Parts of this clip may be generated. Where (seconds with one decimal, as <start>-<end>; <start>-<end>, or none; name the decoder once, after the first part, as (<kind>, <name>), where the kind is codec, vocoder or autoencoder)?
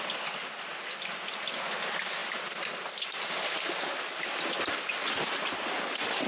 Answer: none